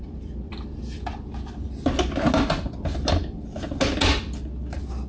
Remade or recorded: recorded